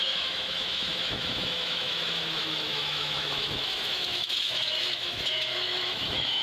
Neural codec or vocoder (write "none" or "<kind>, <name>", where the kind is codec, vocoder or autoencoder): autoencoder, DAC-VAE